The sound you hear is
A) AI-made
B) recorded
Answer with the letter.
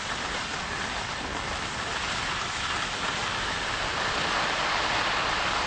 B